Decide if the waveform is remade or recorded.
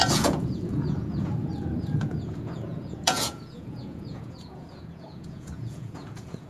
remade